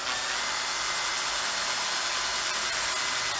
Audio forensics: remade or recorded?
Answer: recorded